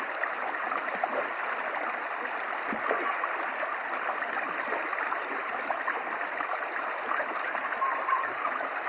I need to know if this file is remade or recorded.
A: recorded